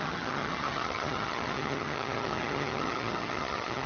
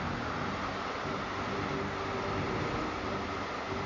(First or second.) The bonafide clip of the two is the second